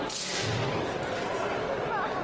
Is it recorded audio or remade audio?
recorded